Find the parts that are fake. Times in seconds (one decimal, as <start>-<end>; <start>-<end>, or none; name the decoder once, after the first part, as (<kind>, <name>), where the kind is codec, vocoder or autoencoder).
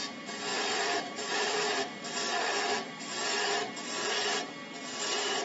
0.5-3.7 (vocoder, BigVGAN v2)